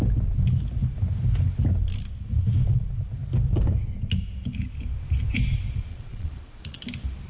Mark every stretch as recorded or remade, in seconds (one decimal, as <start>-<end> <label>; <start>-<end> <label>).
0.0-5.9 recorded; 5.9-6.8 remade; 6.8-7.3 recorded